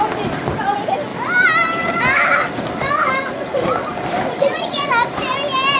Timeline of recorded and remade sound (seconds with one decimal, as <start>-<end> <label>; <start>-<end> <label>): 0.0-4.4 recorded; 4.4-4.9 remade; 4.9-5.8 recorded